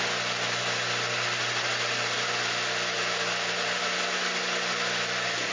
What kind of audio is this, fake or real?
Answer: real